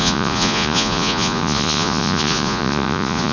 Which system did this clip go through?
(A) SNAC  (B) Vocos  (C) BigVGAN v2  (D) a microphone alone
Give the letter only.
B